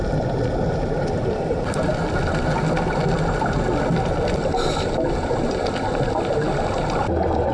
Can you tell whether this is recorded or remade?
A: recorded